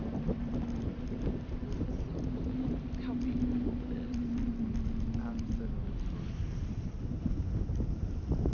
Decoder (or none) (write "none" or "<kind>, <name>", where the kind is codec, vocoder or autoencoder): none